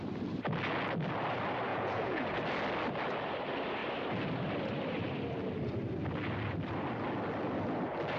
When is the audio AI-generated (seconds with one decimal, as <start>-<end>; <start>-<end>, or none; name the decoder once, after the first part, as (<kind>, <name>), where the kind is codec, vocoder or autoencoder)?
1.7-2.2 (vocoder, Vocos)